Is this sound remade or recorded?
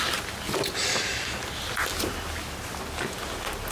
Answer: recorded